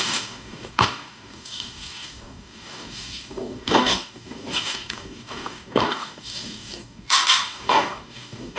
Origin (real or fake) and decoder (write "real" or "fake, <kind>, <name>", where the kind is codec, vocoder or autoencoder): fake, codec, DAC